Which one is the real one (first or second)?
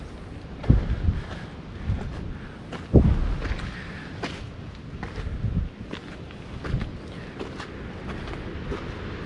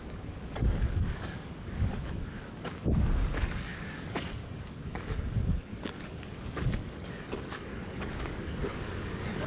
first